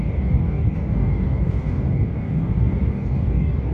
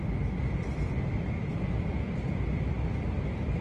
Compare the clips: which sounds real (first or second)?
second